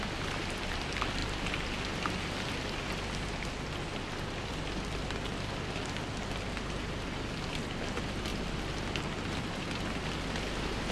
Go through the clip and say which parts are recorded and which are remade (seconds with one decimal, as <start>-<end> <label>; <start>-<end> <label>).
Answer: 0.0-10.9 recorded